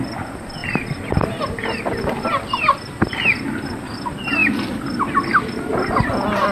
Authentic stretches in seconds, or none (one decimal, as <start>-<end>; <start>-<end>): 0.0-0.6; 1.4-6.5